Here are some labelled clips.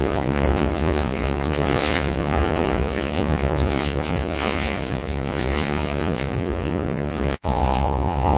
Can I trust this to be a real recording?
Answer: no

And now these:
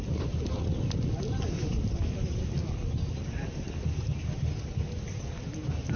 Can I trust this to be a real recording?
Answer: yes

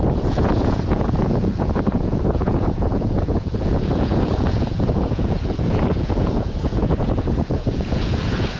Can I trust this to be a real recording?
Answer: no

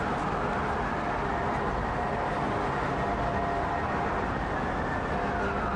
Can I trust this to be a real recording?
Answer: yes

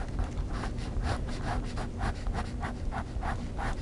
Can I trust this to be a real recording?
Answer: yes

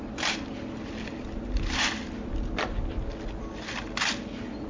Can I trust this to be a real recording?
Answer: yes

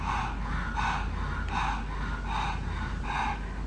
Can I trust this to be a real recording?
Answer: yes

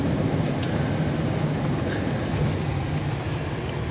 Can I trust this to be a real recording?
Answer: yes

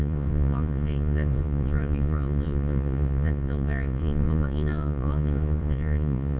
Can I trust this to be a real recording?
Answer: no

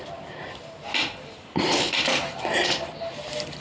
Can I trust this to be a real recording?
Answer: yes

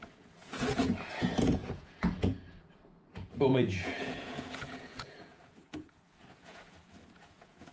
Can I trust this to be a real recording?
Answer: no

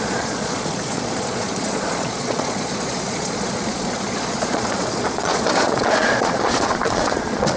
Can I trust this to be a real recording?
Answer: no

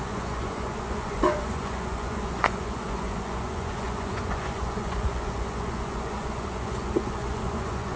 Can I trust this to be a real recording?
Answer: no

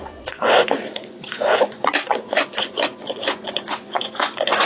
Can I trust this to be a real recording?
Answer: no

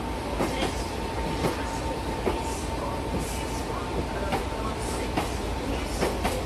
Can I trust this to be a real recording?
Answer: yes